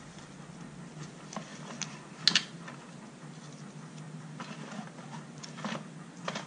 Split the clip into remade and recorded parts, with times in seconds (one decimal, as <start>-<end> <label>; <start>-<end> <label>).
0.0-6.5 recorded